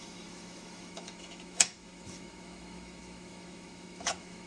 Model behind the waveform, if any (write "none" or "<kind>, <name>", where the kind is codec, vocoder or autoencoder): autoencoder, DAC-VAE